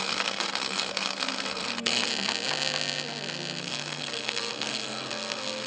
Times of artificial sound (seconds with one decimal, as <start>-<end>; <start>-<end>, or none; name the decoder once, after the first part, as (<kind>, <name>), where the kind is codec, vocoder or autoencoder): 0.0-2.1 (codec, SNAC); 3.6-5.7